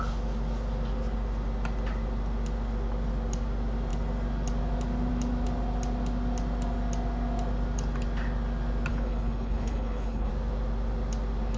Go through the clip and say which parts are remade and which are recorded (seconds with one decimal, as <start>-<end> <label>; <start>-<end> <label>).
0.0-8.9 recorded; 8.9-10.3 remade; 10.3-11.6 recorded